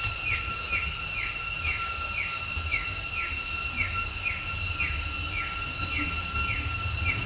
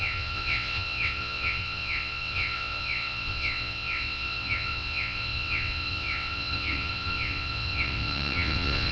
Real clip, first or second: first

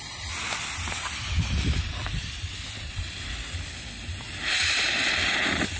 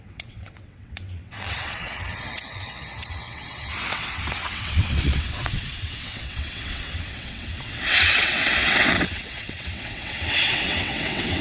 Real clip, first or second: first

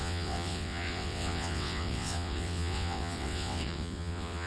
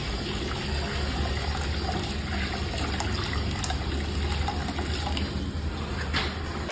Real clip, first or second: second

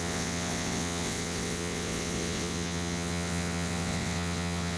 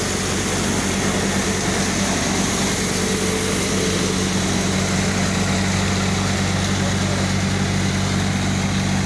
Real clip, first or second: second